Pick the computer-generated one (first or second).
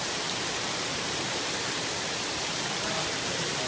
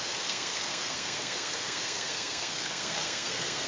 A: second